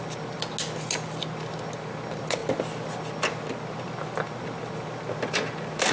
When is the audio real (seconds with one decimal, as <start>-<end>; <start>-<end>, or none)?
0.0-5.9